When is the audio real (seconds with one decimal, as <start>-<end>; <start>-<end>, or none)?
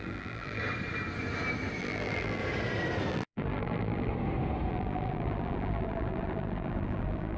0.6-1.8; 2.4-3.1; 4.1-4.7